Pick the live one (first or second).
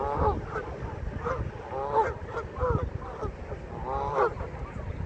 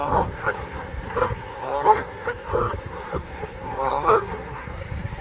first